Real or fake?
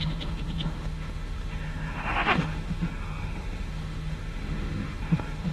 fake